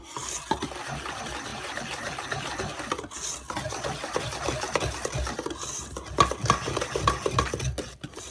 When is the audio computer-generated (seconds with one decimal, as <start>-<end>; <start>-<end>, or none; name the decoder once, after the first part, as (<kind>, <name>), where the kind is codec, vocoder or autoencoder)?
1.5-2.1 (vocoder, BigVGAN v2)